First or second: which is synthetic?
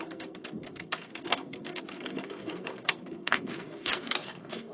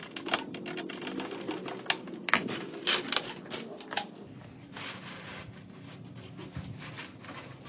first